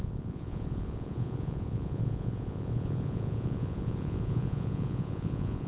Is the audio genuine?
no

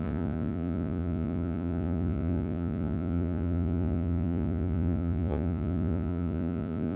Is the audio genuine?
no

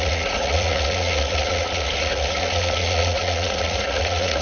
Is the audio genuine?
no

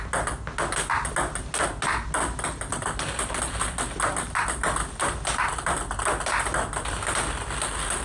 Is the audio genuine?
yes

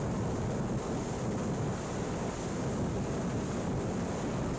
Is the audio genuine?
yes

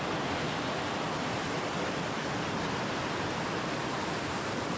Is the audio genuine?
yes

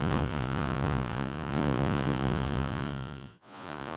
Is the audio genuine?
no